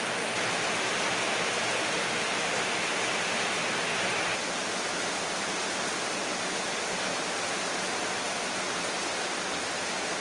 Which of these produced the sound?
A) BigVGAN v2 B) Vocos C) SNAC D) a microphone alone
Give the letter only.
D